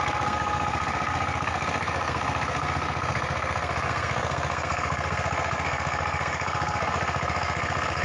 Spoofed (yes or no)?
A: yes